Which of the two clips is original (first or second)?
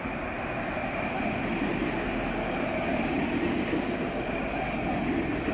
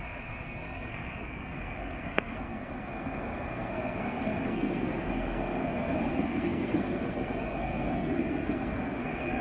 first